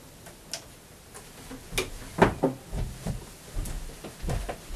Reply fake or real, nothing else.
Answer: real